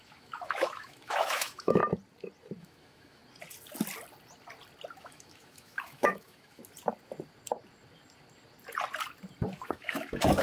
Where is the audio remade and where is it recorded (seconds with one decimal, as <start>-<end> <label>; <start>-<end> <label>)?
0.0-1.8 remade; 1.8-2.6 recorded; 2.6-3.2 remade; 3.2-5.0 recorded; 5.0-6.6 remade; 6.6-9.5 recorded; 9.5-10.4 remade